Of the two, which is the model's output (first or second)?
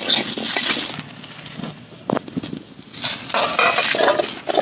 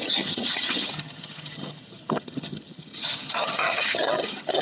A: second